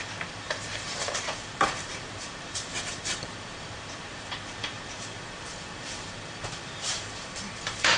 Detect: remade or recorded remade